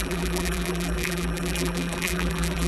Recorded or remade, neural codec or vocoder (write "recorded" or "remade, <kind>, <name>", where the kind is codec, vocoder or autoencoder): remade, vocoder, BigVGAN v2